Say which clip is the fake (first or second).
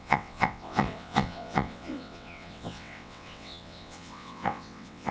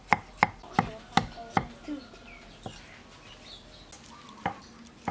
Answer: first